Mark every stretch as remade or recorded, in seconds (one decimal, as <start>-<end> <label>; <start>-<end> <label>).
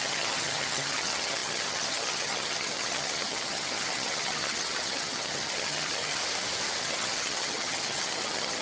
0.0-6.2 remade; 6.2-6.8 recorded; 6.8-8.6 remade